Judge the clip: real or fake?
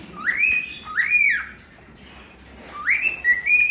real